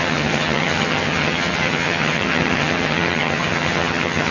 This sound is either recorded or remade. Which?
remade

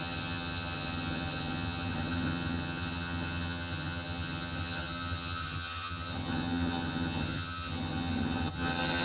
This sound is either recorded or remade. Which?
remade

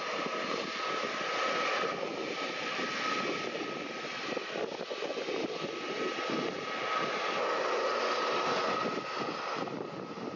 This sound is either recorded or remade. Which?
recorded